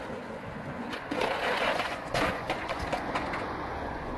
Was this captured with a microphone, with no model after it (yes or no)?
no